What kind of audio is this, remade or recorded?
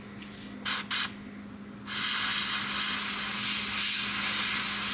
recorded